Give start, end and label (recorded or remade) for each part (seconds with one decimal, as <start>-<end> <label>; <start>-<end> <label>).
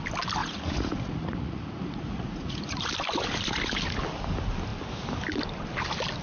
0.0-0.4 recorded; 0.4-2.9 remade; 2.9-6.2 recorded